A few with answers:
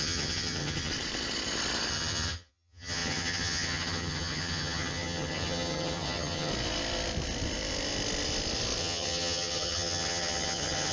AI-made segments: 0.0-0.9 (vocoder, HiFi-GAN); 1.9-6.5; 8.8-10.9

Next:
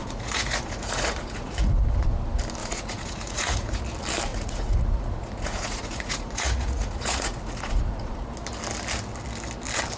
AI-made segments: 0.0-1.7 (vocoder, Vocos); 2.6-3.8; 4.3-8.3

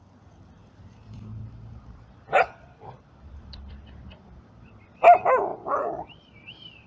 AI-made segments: 0.6-4.7 (vocoder, BigVGAN v2); 5.5-6.9

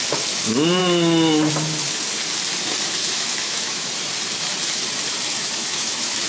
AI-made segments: 3.0-3.9 (autoencoder, DAC-VAE); 5.3-6.3

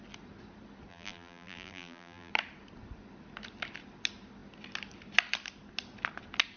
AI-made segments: 0.9-2.3 (vocoder, BigVGAN v2)

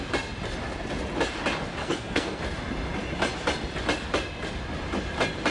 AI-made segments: 1.8-2.4 (codec, SNAC)

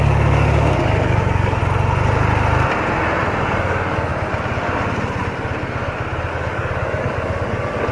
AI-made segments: 0.0-1.6 (codec, DAC); 3.4-4.1; 6.3-7.9